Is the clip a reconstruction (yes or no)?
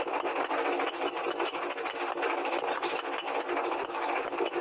no